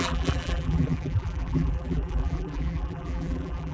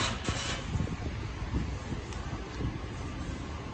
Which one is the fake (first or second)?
first